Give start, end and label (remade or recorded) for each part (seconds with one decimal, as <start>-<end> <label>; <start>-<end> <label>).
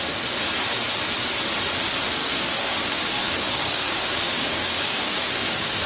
0.0-2.2 recorded; 2.2-5.9 remade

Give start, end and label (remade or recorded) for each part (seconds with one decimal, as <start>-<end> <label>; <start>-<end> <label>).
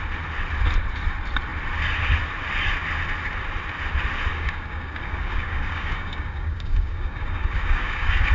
0.0-4.3 recorded; 4.3-8.3 remade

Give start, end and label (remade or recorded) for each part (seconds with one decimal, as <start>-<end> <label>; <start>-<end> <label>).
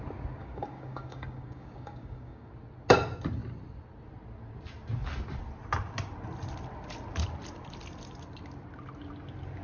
0.0-0.4 recorded; 0.4-2.5 remade; 2.5-9.6 recorded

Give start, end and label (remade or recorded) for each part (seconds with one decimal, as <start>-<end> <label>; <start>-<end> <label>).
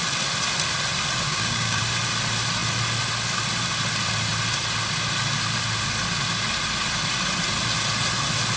0.0-1.3 recorded; 1.3-1.8 remade; 1.8-8.6 recorded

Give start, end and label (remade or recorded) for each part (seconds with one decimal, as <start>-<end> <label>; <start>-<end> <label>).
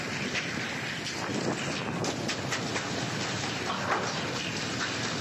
0.0-5.2 recorded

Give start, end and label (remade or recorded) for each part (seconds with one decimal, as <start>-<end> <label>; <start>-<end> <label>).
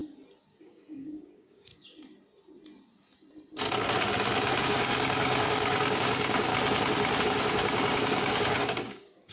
0.0-0.6 recorded; 0.6-1.7 remade; 1.7-4.6 recorded; 4.6-6.5 remade; 6.5-7.2 recorded; 7.2-9.3 remade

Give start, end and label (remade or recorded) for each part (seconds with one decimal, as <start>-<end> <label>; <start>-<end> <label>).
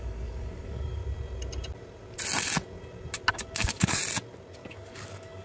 0.0-1.0 remade; 1.0-3.3 recorded; 3.3-4.0 remade; 4.0-4.7 recorded; 4.7-5.4 remade